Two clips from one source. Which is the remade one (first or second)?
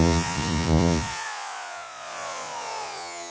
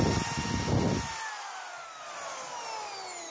first